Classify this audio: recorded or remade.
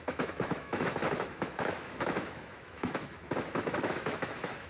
remade